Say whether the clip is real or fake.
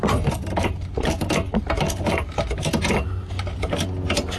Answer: real